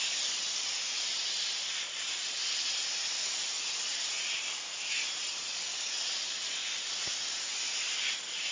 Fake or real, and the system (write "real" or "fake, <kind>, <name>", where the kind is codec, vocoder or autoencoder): real